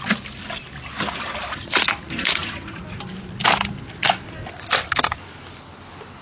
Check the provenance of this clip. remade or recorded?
recorded